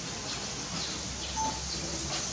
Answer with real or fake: real